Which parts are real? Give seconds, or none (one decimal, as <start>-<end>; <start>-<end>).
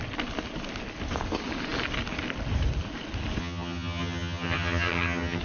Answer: 0.0-3.4